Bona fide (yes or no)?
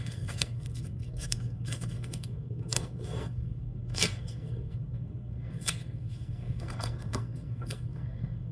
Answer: no